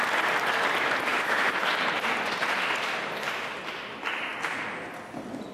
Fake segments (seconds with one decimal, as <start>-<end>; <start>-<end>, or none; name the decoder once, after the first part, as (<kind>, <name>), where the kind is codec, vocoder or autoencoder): 1.1-1.7 (autoencoder, DAC-VAE)